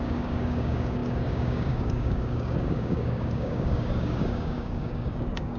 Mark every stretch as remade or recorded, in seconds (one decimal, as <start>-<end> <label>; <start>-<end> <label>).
0.0-5.6 remade